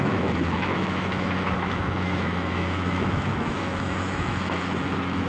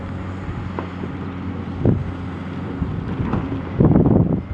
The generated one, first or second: first